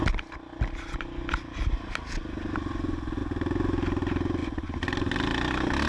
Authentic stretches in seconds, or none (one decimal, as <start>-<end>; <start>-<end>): 0.0-5.9